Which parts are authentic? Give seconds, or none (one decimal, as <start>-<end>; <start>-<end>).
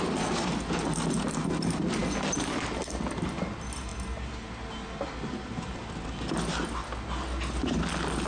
0.0-8.3